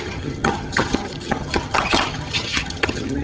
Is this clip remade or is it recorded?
remade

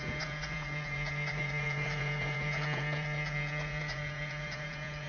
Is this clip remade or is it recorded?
remade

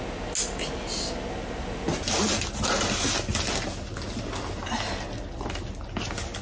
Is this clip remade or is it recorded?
recorded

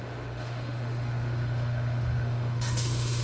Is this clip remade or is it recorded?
remade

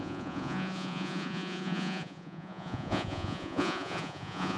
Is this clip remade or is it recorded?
remade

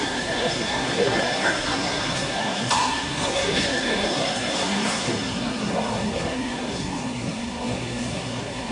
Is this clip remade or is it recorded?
remade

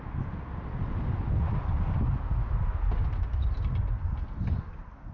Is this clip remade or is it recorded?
recorded